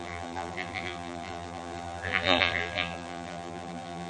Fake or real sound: fake